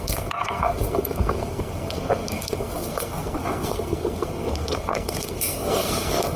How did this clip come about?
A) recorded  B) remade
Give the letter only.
B